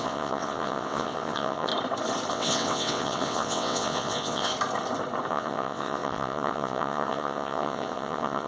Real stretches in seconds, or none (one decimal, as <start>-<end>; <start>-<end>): 1.7-2.3; 4.5-5.3